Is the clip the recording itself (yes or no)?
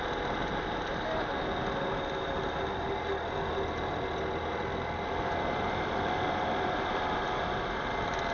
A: yes